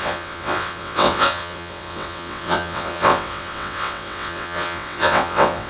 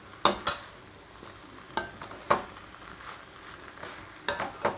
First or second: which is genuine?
second